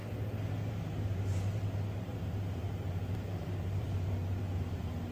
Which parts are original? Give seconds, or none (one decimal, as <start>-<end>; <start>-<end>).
0.0-0.7